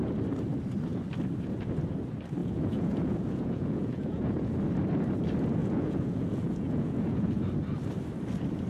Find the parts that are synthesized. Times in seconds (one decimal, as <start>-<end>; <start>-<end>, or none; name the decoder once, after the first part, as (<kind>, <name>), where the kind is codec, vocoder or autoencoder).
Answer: 2.4-4.5 (vocoder, Vocos); 5.6-7.4